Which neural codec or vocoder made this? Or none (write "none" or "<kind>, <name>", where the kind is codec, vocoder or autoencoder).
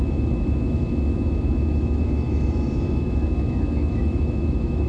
autoencoder, DAC-VAE